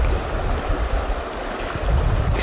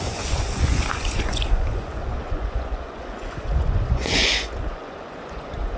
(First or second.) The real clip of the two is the first